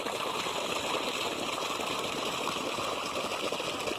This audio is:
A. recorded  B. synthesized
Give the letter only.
A